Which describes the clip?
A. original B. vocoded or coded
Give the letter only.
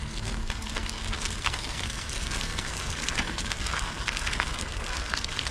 B